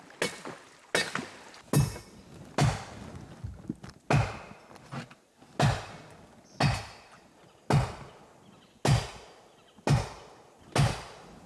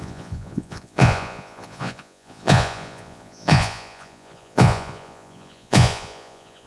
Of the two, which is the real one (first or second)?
first